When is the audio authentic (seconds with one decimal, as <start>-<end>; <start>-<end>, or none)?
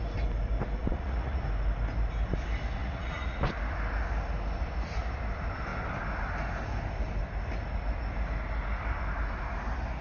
0.0-0.8; 1.4-2.8; 3.4-10.0